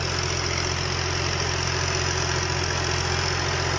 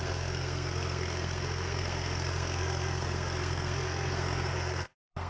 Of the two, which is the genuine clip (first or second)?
first